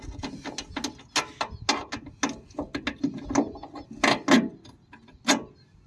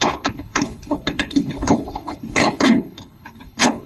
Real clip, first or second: first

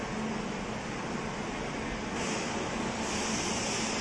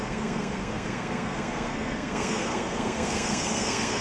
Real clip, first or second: first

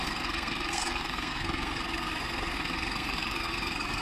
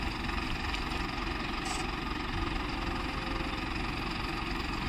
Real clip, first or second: second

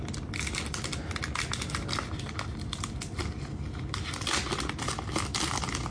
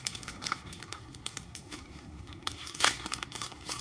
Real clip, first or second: first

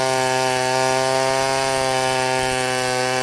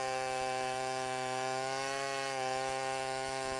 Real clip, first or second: first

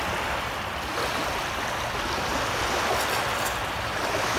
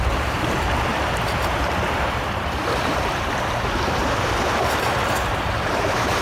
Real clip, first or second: first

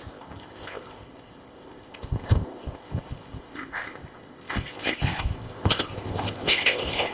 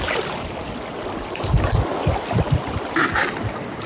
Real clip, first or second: second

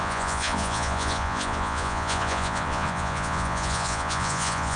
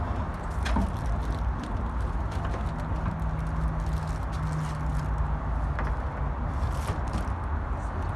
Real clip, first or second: second